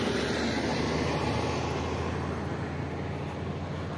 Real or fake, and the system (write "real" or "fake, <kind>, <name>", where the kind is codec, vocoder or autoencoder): real